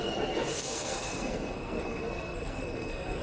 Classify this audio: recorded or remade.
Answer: remade